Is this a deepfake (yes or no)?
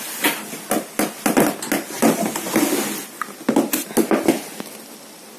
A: no